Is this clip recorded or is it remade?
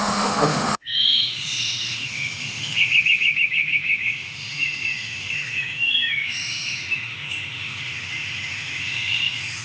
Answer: remade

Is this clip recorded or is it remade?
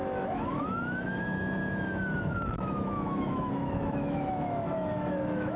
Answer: remade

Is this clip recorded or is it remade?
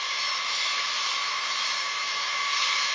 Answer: remade